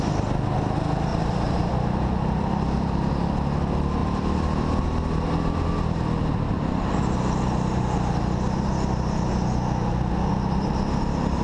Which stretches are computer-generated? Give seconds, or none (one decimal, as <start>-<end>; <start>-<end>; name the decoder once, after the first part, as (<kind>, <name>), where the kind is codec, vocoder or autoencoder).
1.1-3.1 (vocoder, BigVGAN v2); 4.0-4.8